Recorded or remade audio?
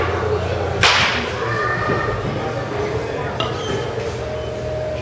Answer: recorded